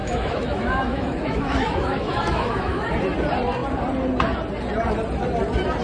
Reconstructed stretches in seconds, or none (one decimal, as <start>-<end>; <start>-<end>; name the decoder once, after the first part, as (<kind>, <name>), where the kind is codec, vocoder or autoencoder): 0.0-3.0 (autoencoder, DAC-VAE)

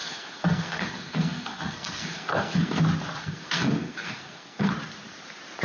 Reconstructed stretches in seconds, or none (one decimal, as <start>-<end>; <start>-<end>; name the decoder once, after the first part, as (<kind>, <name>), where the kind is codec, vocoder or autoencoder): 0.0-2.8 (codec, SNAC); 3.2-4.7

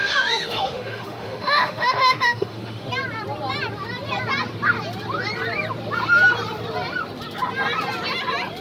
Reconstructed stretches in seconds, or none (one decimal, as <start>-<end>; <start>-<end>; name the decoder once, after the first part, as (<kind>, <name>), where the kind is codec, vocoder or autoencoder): 0.0-2.9 (autoencoder, DAC-VAE)